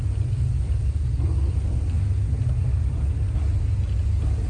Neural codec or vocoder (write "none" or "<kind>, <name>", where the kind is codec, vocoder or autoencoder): none